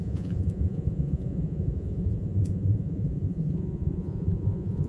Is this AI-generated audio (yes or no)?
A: yes